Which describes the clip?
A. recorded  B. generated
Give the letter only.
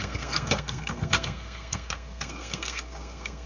B